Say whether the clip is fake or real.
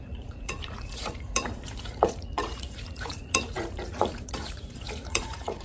fake